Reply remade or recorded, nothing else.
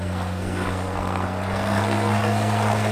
remade